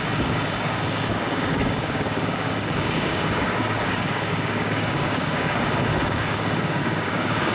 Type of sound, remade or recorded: remade